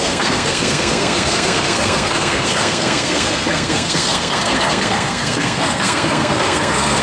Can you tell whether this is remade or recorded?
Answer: remade